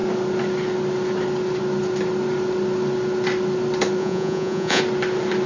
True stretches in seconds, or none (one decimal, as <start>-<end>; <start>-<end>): 0.0-4.0; 4.8-5.5